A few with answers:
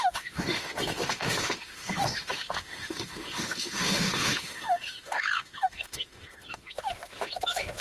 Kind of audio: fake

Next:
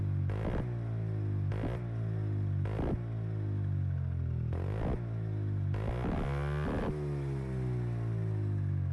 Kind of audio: real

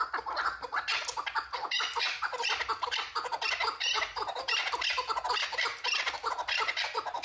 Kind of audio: real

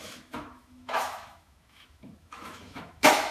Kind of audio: fake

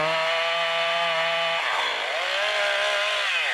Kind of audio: real